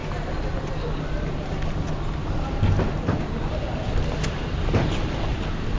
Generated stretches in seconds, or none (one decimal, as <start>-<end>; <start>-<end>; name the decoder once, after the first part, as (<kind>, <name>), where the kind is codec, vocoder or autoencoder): none